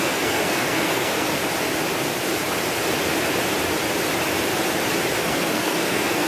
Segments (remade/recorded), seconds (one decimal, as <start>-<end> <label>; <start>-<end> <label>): 0.0-1.4 remade; 1.4-5.2 recorded; 5.2-6.3 remade